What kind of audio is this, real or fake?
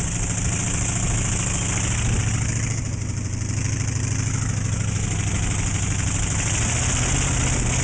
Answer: real